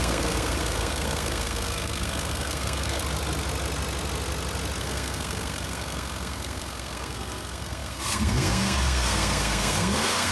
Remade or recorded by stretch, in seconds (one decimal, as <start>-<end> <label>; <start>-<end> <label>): 0.0-3.0 remade; 3.0-4.8 recorded; 4.8-10.3 remade